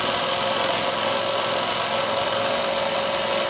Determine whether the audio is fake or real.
real